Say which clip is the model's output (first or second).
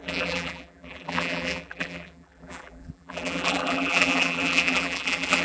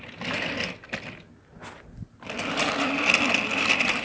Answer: first